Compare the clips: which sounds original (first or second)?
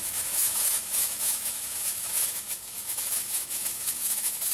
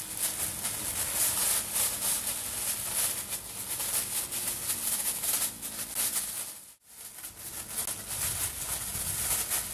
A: second